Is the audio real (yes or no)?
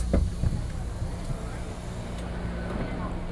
yes